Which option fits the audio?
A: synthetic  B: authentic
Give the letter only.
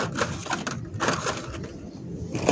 B